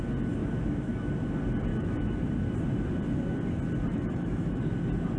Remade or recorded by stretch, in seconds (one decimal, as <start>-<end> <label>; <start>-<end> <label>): 0.0-0.4 recorded; 0.4-1.1 remade; 1.1-1.7 recorded; 1.7-2.2 remade; 2.2-3.9 recorded; 3.9-4.6 remade; 4.6-5.2 recorded